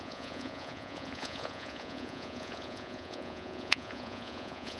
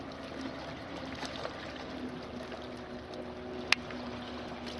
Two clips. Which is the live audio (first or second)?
second